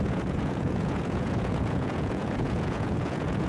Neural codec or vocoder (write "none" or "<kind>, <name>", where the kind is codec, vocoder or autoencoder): vocoder, Vocos